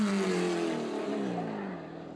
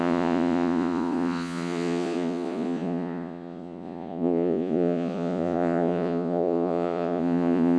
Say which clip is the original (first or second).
first